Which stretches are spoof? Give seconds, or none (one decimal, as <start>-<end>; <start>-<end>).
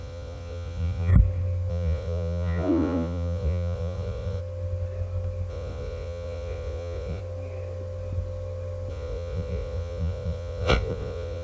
0.0-1.1; 1.7-4.4; 5.5-7.2; 8.9-11.4